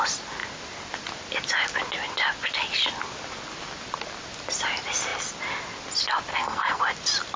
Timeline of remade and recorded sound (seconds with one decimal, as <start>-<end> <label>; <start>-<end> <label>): 0.0-6.3 recorded; 6.3-6.8 remade; 6.8-7.4 recorded